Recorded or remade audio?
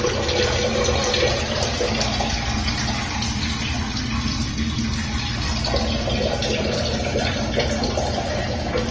recorded